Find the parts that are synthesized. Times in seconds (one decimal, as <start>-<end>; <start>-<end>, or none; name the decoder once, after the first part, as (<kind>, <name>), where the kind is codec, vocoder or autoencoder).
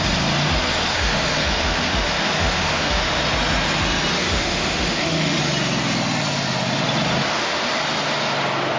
0.9-3.2 (autoencoder, DAC-VAE); 4.3-5.4; 7.3-7.8